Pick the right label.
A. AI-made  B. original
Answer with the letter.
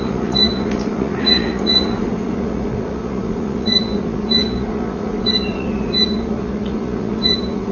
A